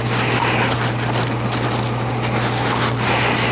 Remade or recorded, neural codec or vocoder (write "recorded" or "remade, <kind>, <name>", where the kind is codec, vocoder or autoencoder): recorded